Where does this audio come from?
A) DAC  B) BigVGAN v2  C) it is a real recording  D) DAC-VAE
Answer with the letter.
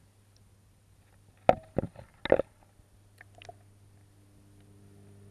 C